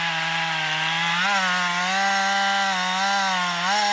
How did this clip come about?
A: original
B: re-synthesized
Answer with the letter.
A